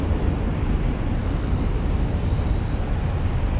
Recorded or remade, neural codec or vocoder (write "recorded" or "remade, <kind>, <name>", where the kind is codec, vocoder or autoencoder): recorded